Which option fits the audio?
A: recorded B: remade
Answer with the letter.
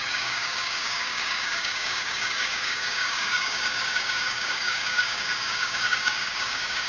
B